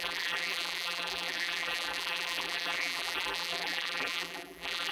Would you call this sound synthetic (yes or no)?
yes